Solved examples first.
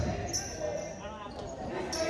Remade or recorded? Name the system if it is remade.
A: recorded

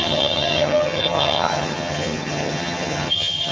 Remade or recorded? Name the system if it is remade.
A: remade, vocoder, HiFi-GAN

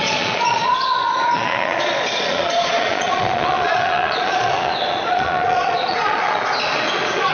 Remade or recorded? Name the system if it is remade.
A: remade, vocoder, Vocos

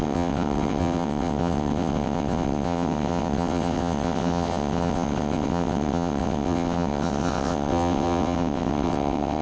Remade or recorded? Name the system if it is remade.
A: remade, vocoder, WaveNeXt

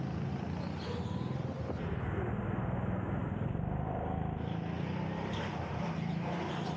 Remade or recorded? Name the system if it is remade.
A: recorded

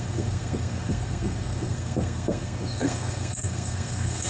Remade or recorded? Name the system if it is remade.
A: remade, codec, SNAC